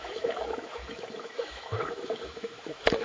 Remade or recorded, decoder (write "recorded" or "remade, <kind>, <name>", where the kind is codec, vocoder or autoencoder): remade, autoencoder, DAC-VAE